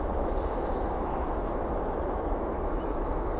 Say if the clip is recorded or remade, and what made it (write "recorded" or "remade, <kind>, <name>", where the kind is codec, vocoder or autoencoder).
remade, autoencoder, DAC-VAE